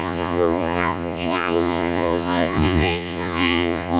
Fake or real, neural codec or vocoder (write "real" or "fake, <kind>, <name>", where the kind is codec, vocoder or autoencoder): fake, vocoder, Vocos